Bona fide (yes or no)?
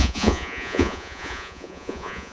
no